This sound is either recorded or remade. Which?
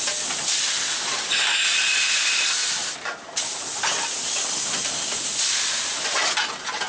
recorded